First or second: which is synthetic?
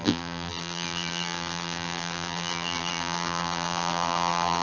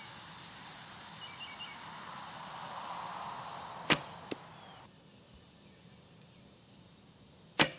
first